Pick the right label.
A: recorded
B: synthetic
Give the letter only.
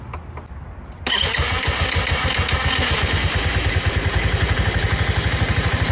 A